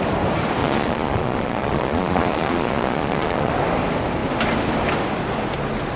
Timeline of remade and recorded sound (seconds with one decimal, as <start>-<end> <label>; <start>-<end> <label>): 0.0-0.6 recorded; 0.6-3.5 remade; 3.5-6.0 recorded

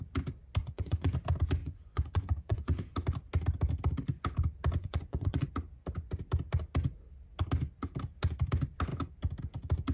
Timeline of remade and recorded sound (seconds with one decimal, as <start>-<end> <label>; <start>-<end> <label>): 0.0-0.6 recorded; 0.6-1.1 remade; 1.1-1.6 recorded; 1.6-2.9 remade; 2.9-4.8 recorded; 4.8-5.5 remade; 5.5-9.9 recorded

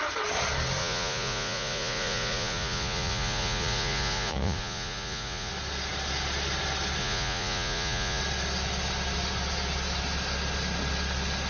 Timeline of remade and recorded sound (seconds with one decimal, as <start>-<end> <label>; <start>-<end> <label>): 0.0-0.8 recorded; 0.8-5.5 remade; 5.5-7.0 recorded; 7.0-8.2 remade; 8.2-11.5 recorded